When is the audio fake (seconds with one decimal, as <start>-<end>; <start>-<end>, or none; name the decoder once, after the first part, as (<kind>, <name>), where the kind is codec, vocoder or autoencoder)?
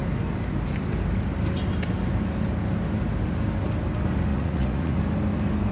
4.3-5.0 (vocoder, Vocos)